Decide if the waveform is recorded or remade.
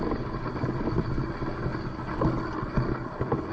recorded